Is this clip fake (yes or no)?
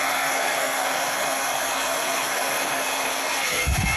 yes